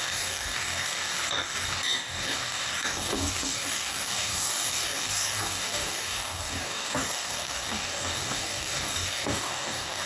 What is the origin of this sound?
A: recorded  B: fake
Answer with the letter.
B